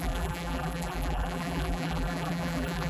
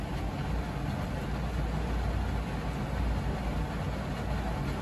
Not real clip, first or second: first